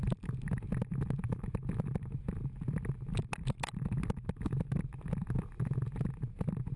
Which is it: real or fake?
real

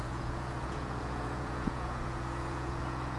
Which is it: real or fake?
fake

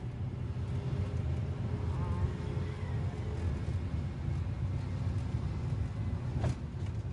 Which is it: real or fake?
real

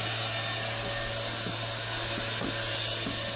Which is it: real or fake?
real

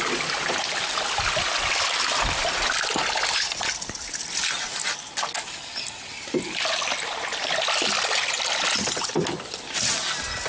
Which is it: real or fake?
real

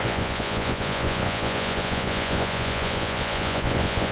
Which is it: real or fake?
fake